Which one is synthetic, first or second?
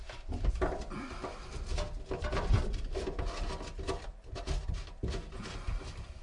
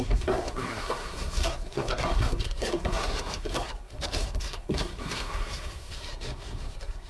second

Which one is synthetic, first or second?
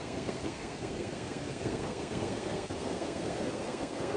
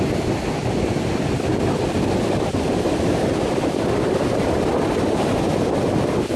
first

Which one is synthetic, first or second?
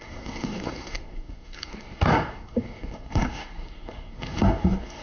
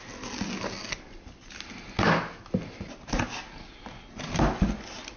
first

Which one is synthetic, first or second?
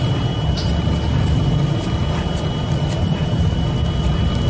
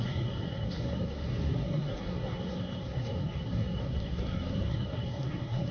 second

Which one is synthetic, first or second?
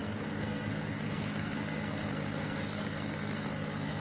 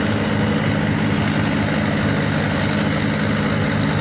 first